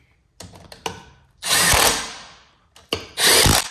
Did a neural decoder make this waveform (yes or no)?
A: no